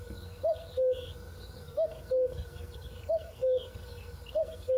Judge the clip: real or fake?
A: fake